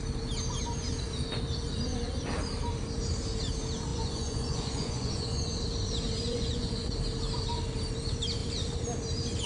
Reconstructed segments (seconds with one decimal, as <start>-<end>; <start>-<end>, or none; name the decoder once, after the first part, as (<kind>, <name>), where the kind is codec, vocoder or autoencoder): 3.9-5.6 (vocoder, Vocos); 6.3-6.9